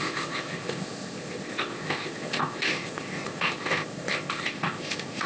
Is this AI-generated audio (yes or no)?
yes